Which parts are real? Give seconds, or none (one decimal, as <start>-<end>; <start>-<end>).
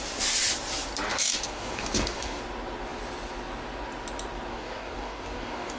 0.0-1.1; 2.4-4.5